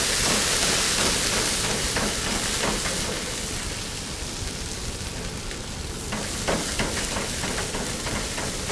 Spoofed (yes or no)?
no